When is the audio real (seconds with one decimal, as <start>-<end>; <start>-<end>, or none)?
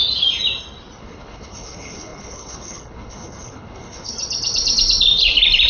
0.0-1.0; 4.1-5.7